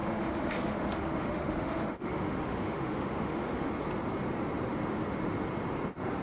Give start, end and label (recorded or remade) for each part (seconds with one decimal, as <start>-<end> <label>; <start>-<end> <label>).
0.0-3.7 remade; 3.7-6.2 recorded